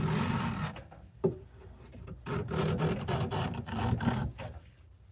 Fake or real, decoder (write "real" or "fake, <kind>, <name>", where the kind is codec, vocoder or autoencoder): real